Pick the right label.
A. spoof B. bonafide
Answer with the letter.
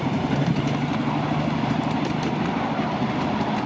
B